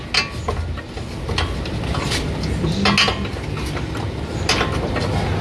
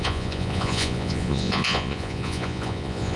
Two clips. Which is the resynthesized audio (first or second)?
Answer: second